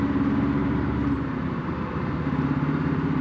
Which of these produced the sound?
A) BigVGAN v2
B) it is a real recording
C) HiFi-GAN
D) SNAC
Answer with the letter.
A